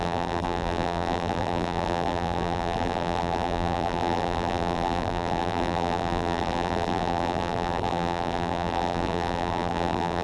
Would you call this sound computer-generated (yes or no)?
yes